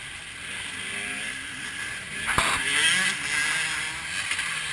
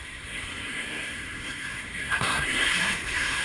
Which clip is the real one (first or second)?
first